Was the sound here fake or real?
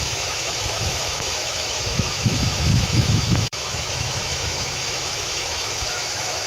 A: fake